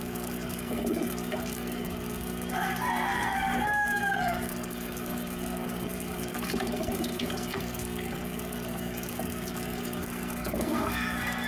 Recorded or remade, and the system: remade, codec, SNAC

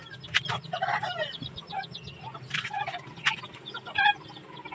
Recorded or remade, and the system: recorded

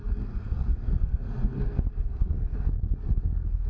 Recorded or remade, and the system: remade, codec, SNAC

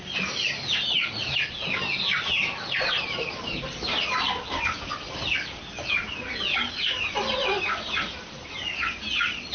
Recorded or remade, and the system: recorded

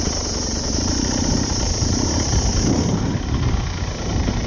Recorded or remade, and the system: remade, vocoder, BigVGAN v2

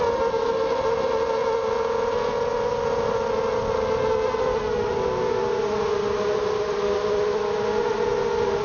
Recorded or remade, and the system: recorded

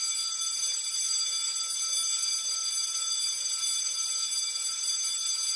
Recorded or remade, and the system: recorded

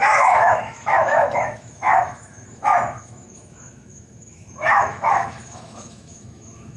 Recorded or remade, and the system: remade, autoencoder, DAC-VAE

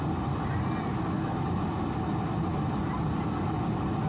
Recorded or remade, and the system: recorded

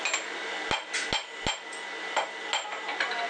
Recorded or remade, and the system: recorded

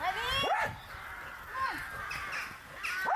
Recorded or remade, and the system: recorded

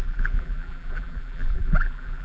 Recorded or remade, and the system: remade, vocoder, BigVGAN v2